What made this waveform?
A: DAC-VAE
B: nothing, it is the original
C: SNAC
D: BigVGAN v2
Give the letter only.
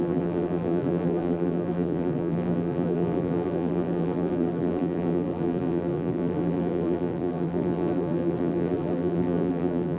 D